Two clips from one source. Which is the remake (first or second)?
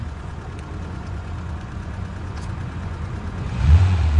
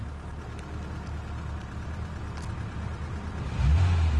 first